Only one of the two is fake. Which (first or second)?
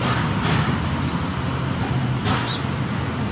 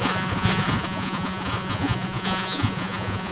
second